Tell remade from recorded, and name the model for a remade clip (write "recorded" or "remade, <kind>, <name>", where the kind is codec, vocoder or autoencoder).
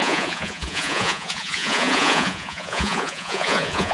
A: remade, vocoder, Vocos